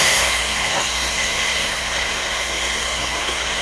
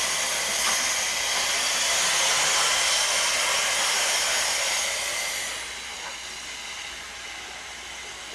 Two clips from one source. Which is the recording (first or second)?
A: second